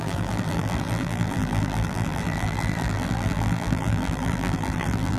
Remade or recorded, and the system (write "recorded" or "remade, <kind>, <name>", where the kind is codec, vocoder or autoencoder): remade, vocoder, BigVGAN v2